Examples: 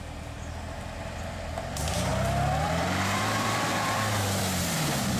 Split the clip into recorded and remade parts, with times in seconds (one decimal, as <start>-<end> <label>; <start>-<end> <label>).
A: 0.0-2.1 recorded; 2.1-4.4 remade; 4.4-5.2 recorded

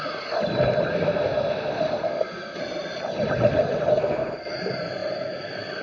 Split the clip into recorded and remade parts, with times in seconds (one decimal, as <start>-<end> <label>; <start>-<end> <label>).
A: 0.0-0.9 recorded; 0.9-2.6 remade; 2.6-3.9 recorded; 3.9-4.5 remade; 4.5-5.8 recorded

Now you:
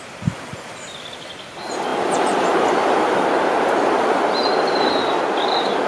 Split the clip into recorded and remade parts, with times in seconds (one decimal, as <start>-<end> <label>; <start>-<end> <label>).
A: 0.0-5.9 recorded